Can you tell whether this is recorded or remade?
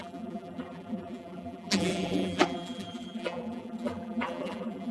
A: remade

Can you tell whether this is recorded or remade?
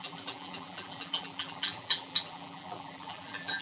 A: remade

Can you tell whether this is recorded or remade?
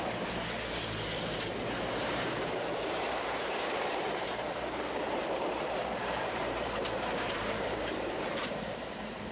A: remade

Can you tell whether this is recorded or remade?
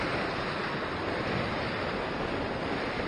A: recorded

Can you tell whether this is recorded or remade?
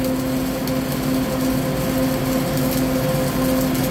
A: recorded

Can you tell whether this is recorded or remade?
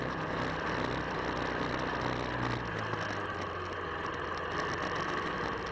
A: recorded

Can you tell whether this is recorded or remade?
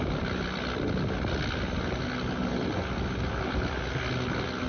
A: recorded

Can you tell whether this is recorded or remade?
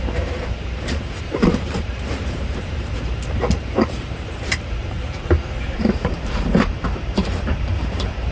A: remade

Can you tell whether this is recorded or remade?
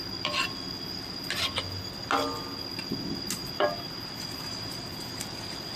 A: recorded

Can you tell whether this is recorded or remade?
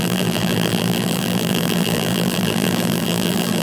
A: remade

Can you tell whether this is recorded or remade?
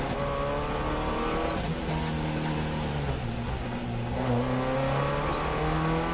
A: recorded